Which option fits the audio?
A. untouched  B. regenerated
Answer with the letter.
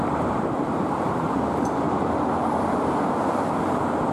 B